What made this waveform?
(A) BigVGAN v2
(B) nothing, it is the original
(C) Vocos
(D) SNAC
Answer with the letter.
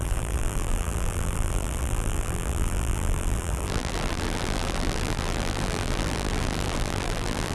A